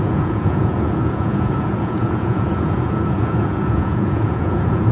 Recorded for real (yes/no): no